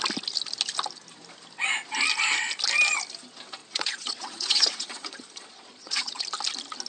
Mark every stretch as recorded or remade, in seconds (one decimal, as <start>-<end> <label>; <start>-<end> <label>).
0.0-3.6 recorded; 3.6-6.2 remade; 6.2-6.9 recorded